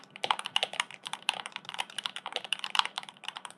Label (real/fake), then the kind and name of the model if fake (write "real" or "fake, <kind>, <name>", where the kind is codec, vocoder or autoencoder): fake, vocoder, BigVGAN v2